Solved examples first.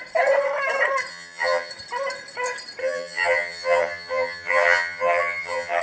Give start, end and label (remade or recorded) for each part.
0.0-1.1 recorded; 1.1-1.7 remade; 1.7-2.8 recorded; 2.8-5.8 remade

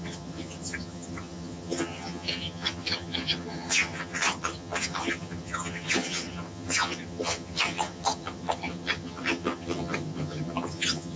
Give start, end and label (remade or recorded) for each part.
0.0-11.2 remade

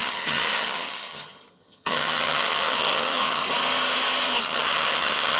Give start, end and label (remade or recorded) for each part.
0.0-3.4 remade; 3.4-4.4 recorded; 4.4-5.4 remade

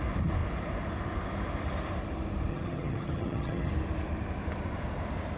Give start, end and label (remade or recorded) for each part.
0.0-2.5 recorded; 2.5-3.7 remade; 3.7-5.4 recorded

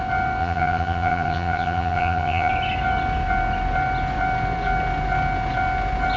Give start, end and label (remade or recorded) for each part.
0.0-0.4 recorded; 0.4-2.5 remade; 2.5-6.2 recorded